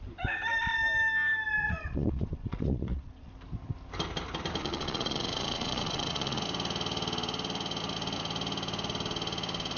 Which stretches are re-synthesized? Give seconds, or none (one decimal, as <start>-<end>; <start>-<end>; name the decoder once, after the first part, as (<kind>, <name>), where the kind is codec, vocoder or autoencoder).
1.6-3.3 (vocoder, Vocos); 4.6-6.4